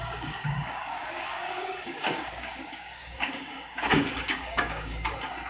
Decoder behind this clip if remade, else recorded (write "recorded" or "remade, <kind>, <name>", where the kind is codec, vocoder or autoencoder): remade, codec, DAC